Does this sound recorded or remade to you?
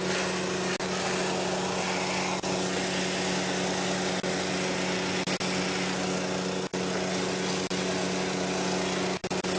recorded